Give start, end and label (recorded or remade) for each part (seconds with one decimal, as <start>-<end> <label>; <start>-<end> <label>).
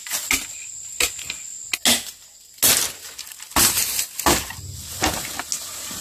0.0-6.0 recorded